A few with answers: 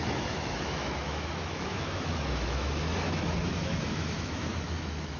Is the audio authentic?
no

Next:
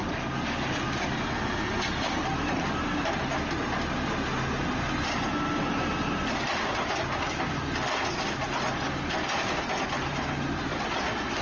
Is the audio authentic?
yes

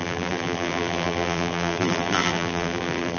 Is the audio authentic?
no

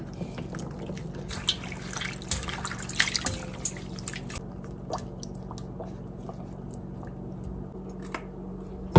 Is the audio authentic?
yes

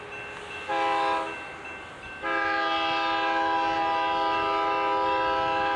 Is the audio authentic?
yes